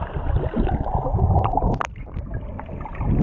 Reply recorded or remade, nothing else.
recorded